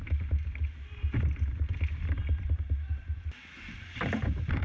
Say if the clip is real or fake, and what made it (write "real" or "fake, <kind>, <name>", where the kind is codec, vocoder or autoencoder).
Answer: real